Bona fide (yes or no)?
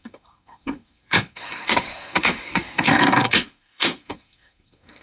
no